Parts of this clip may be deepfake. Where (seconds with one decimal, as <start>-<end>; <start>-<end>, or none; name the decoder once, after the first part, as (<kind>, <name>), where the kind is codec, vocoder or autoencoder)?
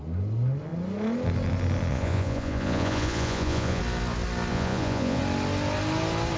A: 1.9-3.8 (vocoder, Vocos); 4.5-5.2